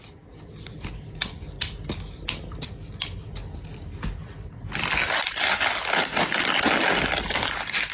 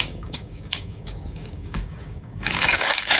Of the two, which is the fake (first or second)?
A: second